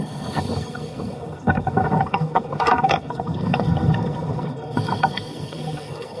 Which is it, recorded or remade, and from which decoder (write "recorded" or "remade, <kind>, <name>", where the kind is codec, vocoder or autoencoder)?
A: remade, codec, SNAC